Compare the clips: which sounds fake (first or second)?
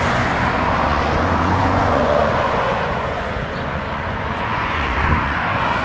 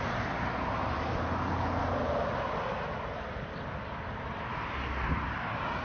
first